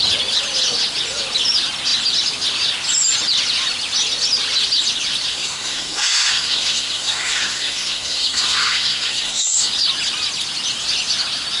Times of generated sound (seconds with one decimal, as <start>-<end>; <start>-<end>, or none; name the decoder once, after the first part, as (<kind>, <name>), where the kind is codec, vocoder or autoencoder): 5.3-9.7 (codec, SNAC)